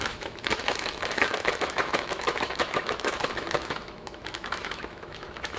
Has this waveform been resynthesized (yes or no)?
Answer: yes